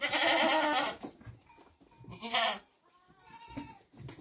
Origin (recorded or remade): recorded